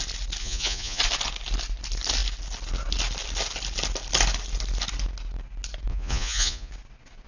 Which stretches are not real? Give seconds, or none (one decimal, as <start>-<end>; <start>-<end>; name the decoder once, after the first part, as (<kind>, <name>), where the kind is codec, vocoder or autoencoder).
0.4-1.0 (vocoder, Vocos); 5.9-6.7